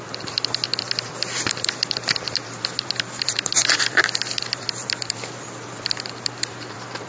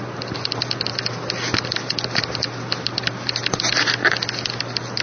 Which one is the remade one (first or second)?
first